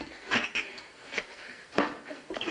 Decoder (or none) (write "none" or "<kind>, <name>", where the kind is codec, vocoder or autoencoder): codec, SNAC